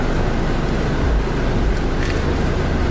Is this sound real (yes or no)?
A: yes